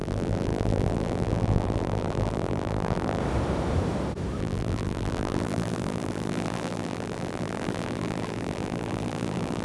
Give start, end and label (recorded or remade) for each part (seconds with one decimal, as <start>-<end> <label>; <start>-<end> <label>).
0.0-3.2 remade; 3.2-4.4 recorded; 4.4-9.6 remade